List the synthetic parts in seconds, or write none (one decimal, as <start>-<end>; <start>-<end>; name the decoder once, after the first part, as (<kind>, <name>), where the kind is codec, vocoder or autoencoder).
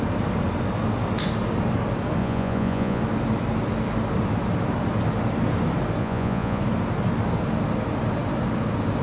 2.2-3.0 (vocoder, Vocos); 6.0-6.6